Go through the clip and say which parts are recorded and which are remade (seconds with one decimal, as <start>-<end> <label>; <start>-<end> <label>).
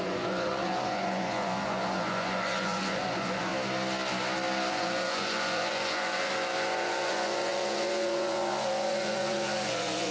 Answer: 0.0-3.5 remade; 3.5-4.7 recorded; 4.7-10.1 remade